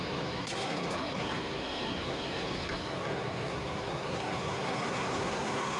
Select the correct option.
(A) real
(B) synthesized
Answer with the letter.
B